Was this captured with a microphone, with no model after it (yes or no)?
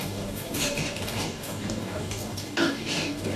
no